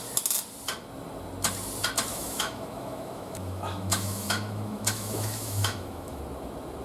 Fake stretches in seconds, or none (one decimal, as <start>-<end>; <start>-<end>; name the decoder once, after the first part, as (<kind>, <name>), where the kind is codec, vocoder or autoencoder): 2.1-6.2 (autoencoder, DAC-VAE)